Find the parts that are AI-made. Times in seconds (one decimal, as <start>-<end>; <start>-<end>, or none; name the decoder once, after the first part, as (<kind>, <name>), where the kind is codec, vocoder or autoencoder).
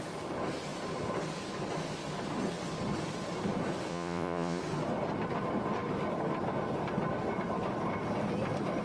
3.9-4.6 (vocoder, Vocos)